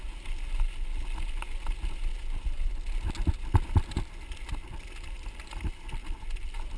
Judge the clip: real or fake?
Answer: real